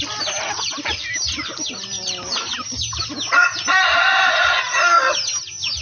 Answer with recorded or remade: recorded